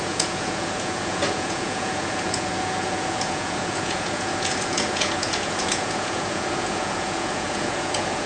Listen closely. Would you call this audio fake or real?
fake